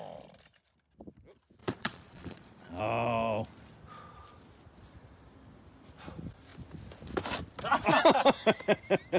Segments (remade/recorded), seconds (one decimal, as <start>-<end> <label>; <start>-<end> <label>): 0.0-1.6 recorded; 1.6-2.8 remade; 2.8-9.2 recorded

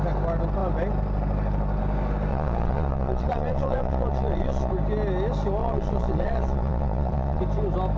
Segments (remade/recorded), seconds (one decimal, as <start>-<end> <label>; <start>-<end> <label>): 0.0-2.3 recorded; 2.3-4.7 remade; 4.7-5.6 recorded; 5.6-7.4 remade; 7.4-8.0 recorded

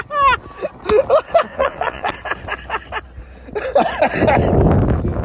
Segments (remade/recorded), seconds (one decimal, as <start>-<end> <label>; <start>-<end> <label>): 0.0-1.5 recorded; 1.5-2.1 remade; 2.1-5.2 recorded

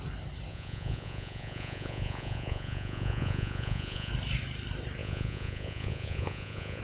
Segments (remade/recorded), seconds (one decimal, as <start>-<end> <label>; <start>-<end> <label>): 0.0-0.5 recorded; 0.5-4.1 remade; 4.1-5.0 recorded; 5.0-6.8 remade

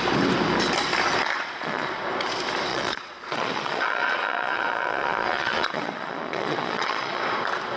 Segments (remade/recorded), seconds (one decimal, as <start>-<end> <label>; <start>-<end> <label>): 0.0-1.3 recorded; 1.3-1.9 remade; 1.9-2.7 recorded; 2.7-7.2 remade; 7.2-7.8 recorded

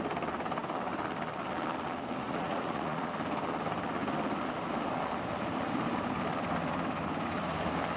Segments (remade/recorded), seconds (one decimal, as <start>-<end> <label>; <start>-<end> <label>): 0.0-2.2 recorded; 2.2-3.1 remade; 3.1-8.0 recorded